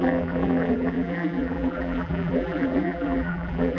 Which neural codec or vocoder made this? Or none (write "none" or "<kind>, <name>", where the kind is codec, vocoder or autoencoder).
vocoder, BigVGAN v2